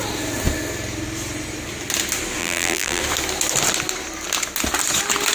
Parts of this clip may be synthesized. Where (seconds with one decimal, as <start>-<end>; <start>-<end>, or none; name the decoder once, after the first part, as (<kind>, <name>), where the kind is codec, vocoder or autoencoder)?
2.4-3.0 (vocoder, BigVGAN v2)